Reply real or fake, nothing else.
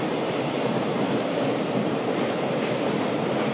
real